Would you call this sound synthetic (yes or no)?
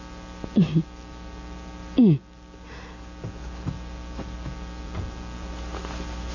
no